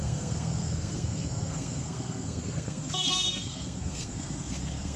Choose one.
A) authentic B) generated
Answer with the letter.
B